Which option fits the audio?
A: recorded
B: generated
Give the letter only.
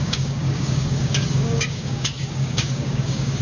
B